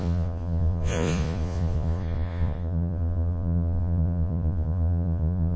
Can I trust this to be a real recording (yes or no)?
no